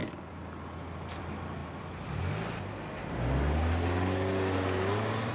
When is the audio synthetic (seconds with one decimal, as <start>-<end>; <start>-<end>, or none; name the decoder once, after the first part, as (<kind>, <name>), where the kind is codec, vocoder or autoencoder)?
1.6-2.7 (vocoder, BigVGAN v2)